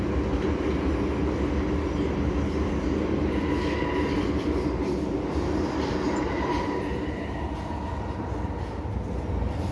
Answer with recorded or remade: recorded